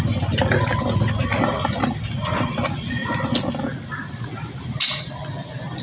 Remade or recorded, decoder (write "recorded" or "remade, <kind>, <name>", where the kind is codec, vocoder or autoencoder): recorded